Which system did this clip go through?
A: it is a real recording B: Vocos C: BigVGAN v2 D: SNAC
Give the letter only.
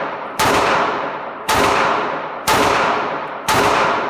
C